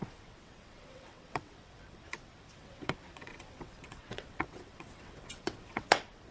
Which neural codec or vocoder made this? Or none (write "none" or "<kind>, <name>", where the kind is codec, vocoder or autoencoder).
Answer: vocoder, WaveNeXt